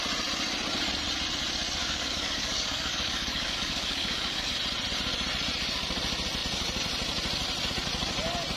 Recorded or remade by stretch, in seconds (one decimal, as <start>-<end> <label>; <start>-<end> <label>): 0.0-1.8 recorded; 1.8-4.5 remade; 4.5-8.6 recorded